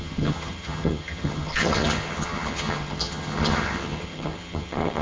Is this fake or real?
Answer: fake